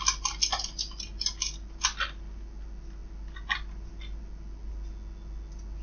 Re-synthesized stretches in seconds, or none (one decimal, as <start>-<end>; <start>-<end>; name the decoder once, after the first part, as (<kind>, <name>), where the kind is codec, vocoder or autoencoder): none